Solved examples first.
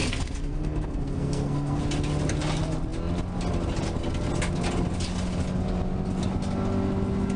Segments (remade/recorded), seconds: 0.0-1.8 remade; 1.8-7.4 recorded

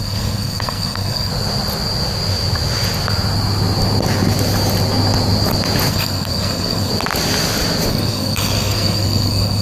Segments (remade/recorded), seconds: 0.0-1.3 remade; 1.3-5.9 recorded; 5.9-6.9 remade; 6.9-7.9 recorded; 7.9-9.6 remade

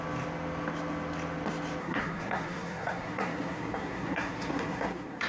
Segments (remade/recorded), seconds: 0.0-1.8 recorded; 1.8-5.3 remade

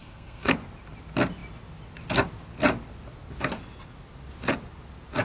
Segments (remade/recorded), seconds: 0.0-0.5 remade; 0.5-5.2 recorded

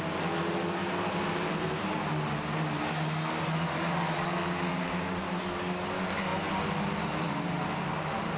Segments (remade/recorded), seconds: 0.0-8.4 recorded

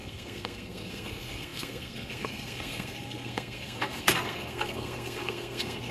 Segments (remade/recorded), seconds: 0.0-5.9 remade

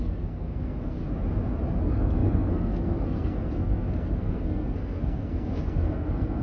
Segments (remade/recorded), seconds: 0.0-1.0 remade; 1.0-1.8 recorded; 1.8-6.4 remade

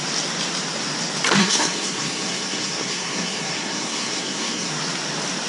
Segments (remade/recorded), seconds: 0.0-1.4 recorded; 1.4-4.7 remade; 4.7-5.5 recorded